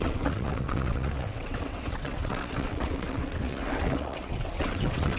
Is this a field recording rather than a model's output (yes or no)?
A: no